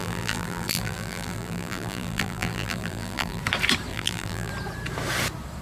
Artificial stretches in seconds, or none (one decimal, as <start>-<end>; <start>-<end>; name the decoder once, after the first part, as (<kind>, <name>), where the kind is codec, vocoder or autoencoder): 0.0-3.4 (vocoder, BigVGAN v2); 3.9-4.5